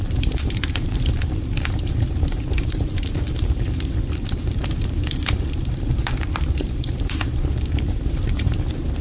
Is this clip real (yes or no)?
no